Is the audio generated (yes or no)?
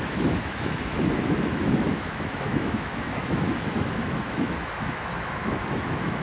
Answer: yes